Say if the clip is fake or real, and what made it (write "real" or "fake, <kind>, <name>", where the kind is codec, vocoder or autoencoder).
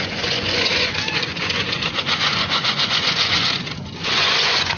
fake, vocoder, Vocos